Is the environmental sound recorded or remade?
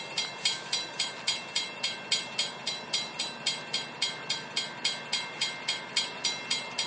recorded